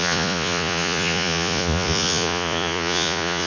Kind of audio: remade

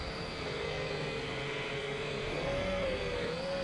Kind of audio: remade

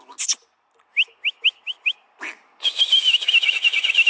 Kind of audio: recorded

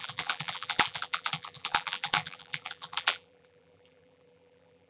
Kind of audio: remade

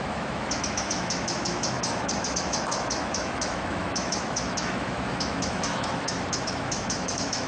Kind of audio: remade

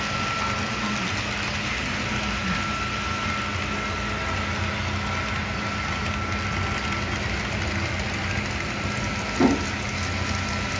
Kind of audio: recorded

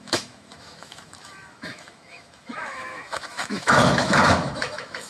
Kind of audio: remade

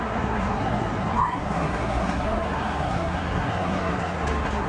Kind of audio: remade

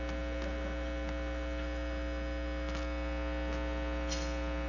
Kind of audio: recorded